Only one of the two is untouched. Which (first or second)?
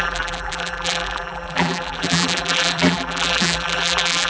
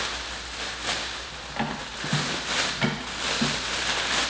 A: second